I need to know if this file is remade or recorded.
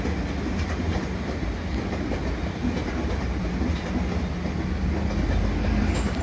recorded